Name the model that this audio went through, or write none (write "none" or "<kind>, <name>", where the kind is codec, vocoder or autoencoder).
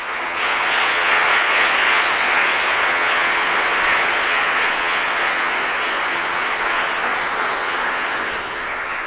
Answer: vocoder, Vocos